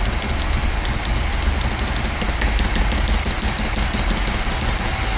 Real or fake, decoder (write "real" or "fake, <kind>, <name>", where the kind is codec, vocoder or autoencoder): real